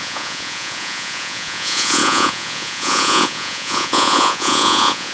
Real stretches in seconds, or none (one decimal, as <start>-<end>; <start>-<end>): none